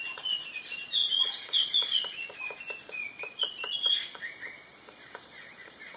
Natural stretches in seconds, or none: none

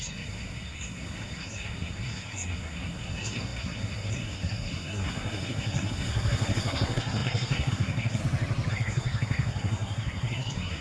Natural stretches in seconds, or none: 8.2-8.7

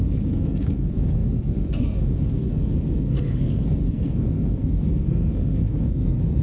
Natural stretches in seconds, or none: none

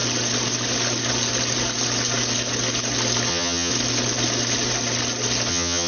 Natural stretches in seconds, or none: 0.0-3.3; 3.7-5.5